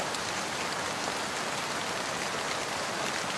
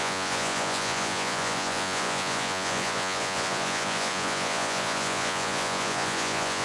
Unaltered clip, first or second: first